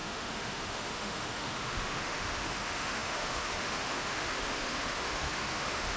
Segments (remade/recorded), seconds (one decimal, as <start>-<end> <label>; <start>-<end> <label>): 0.0-6.0 remade